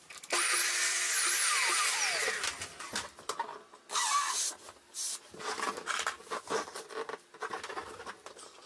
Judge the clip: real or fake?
real